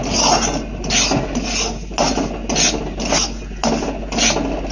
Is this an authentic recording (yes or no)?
yes